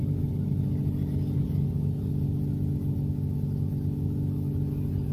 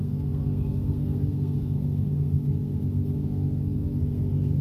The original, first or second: first